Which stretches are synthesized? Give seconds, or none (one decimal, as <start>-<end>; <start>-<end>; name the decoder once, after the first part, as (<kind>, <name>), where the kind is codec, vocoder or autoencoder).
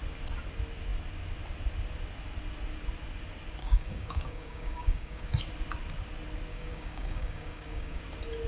3.6-5.4 (codec, DAC); 6.5-8.0